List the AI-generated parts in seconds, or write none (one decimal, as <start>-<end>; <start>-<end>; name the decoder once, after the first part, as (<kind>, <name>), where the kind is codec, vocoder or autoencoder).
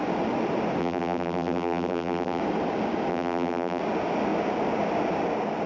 0.8-2.4 (vocoder, BigVGAN v2); 3.1-3.8